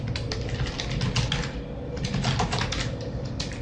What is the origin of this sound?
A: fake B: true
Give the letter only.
B